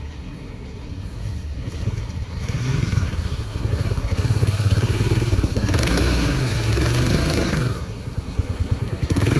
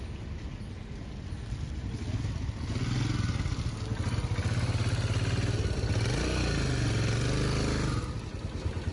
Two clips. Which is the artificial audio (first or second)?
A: first